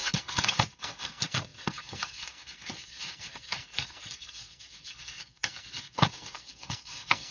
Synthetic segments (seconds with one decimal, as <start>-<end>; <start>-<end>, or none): 0.0-7.3